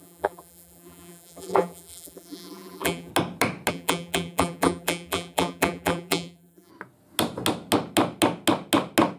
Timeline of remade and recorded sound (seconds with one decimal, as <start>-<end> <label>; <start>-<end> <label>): 0.0-3.1 remade; 3.1-3.7 recorded; 3.7-6.7 remade; 6.7-9.2 recorded

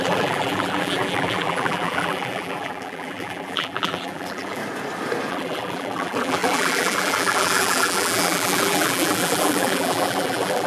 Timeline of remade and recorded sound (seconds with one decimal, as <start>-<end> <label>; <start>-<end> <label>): 0.0-4.6 remade; 4.6-5.3 recorded; 5.3-10.7 remade

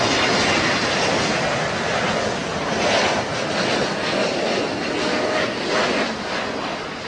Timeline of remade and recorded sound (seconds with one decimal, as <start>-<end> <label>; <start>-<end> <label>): 0.0-7.1 recorded

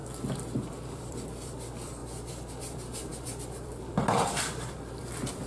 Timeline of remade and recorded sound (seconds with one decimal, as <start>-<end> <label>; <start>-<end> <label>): 0.0-0.7 recorded; 0.7-2.0 remade; 2.0-2.6 recorded; 2.6-5.5 remade

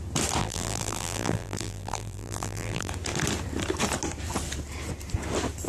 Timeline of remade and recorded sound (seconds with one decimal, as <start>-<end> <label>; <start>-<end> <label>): 0.0-0.4 recorded; 0.4-2.9 remade; 2.9-5.7 recorded

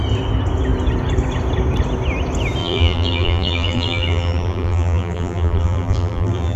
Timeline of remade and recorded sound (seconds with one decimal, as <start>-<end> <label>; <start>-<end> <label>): 0.0-2.6 recorded; 2.6-6.6 remade

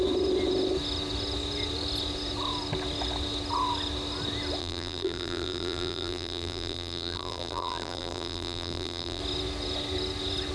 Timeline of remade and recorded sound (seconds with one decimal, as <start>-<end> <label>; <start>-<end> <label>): 0.0-4.6 recorded; 4.6-9.2 remade; 9.2-10.5 recorded